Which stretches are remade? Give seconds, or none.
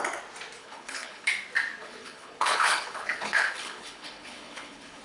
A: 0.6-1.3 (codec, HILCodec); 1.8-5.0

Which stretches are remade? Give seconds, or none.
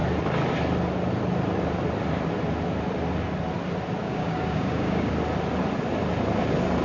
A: 4.0-5.1 (codec, DAC)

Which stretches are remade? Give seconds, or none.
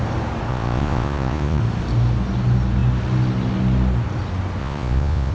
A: 0.5-1.6 (vocoder, Vocos); 4.6-5.3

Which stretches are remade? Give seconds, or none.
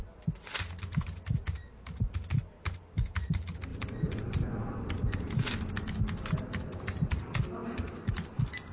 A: 3.7-4.8 (vocoder, BigVGAN v2); 7.6-8.1